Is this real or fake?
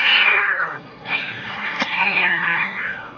fake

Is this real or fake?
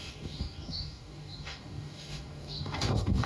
fake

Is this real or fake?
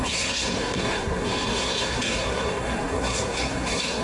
fake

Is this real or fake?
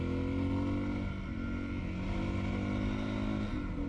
real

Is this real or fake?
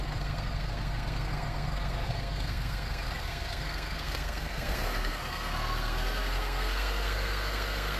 fake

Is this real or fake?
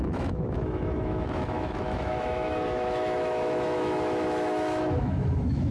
fake